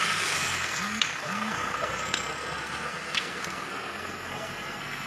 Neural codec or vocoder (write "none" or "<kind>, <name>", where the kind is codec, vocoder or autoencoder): codec, SNAC